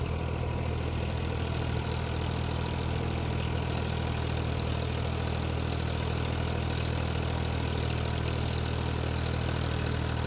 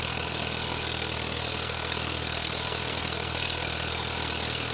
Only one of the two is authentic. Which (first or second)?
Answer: first